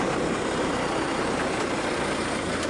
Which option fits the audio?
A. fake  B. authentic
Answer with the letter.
B